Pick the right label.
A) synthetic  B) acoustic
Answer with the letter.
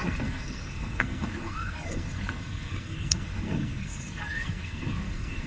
A